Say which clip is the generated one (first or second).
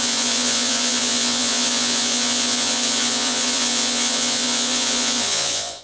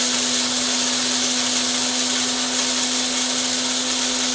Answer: first